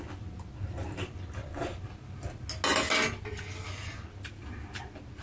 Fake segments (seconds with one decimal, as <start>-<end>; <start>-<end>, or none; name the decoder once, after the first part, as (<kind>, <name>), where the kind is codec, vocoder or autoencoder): none